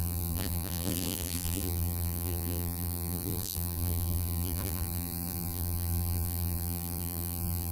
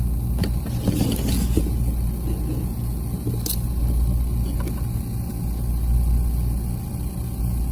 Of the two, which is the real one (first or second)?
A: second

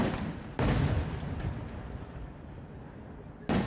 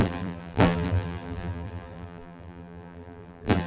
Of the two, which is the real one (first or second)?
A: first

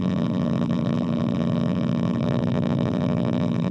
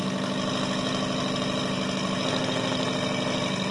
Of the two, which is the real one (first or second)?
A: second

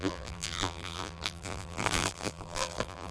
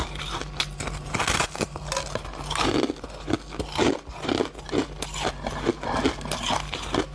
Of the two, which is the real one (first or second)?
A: second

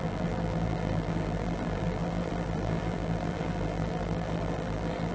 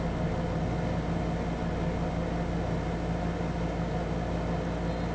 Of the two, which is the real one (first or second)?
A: second